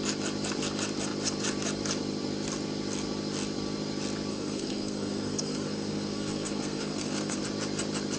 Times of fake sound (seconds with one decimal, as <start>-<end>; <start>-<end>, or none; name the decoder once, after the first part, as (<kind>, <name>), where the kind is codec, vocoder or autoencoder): 4.3-7.4 (codec, SNAC)